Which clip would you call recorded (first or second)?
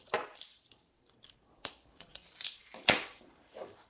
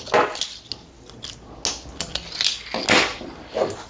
second